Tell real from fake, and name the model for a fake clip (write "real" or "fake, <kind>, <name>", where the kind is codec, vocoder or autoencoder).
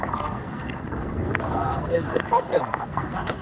fake, codec, SNAC